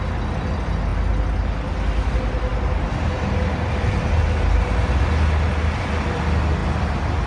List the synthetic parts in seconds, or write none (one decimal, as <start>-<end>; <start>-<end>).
none